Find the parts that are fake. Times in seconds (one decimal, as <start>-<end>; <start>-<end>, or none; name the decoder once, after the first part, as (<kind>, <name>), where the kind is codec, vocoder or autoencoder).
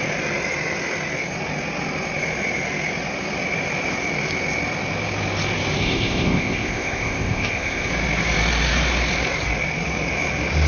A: 5.8-7.9 (codec, ZipCodec)